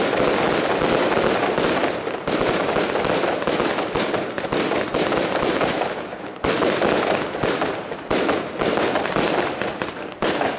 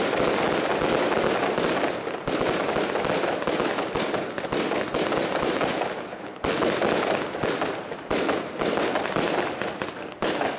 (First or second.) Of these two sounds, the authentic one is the second